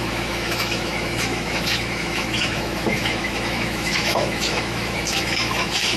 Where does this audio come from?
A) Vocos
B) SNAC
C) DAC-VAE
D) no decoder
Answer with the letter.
C